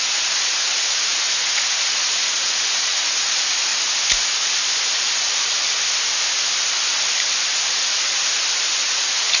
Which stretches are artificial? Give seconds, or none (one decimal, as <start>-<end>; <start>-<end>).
0.0-3.7; 7.8-8.2; 8.8-9.4